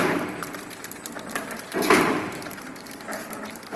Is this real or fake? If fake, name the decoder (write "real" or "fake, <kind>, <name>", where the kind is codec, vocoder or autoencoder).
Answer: fake, vocoder, BigVGAN v2